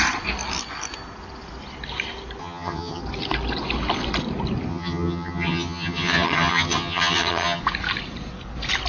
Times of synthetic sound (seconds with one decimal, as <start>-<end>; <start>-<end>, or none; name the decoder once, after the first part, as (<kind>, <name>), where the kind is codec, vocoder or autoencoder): 2.4-3.0 (vocoder, HiFi-GAN); 4.7-7.6